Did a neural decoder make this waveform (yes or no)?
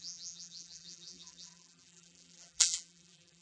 yes